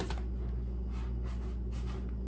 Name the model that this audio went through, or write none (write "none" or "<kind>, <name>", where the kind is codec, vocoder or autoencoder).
none